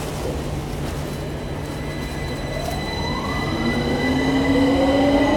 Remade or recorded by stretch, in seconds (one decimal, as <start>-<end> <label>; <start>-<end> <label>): 0.0-5.4 recorded